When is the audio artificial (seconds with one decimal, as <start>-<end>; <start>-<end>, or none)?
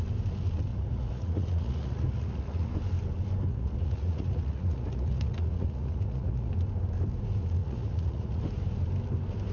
0.7-2.7; 3.5-6.5; 7.6-8.4